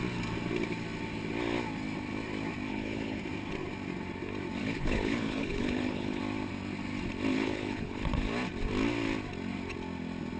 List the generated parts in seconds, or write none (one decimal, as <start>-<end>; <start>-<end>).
2.7-3.2; 4.6-6.2; 7.3-8.0